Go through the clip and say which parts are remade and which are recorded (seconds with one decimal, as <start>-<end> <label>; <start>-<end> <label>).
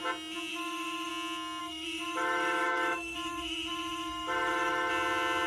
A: 0.0-0.5 recorded; 0.5-1.1 remade; 1.1-1.6 recorded; 1.6-4.9 remade; 4.9-5.5 recorded